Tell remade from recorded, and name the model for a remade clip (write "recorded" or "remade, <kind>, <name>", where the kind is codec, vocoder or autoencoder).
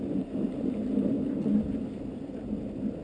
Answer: recorded